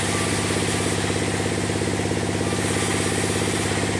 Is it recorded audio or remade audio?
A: recorded